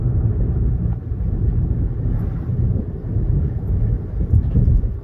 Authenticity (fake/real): fake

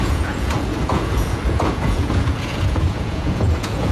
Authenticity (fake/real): fake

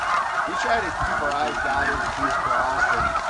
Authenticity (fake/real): real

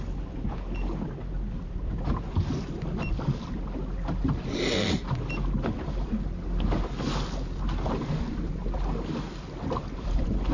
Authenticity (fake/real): real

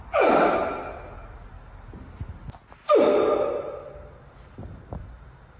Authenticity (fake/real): real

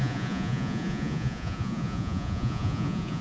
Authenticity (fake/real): fake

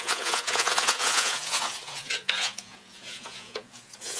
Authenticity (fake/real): fake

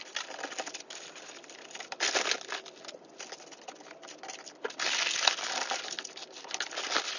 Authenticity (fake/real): real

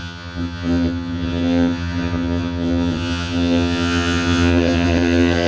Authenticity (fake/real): fake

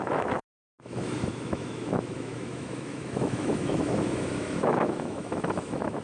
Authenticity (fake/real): fake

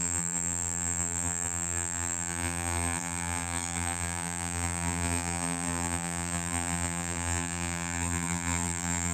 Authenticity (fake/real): fake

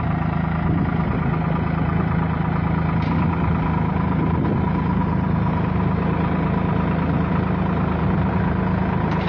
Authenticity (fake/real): real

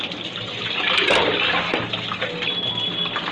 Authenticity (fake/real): real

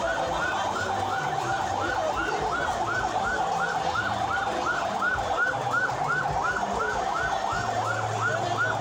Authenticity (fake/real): real